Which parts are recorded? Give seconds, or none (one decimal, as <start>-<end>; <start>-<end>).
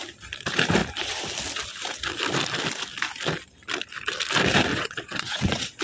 0.0-4.7